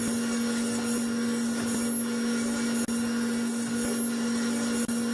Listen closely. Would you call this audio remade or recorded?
recorded